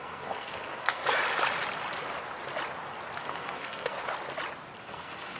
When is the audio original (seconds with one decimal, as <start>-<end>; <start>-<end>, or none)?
1.0-3.2; 4.0-4.8